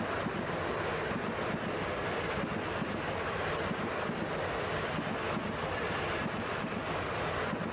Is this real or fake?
real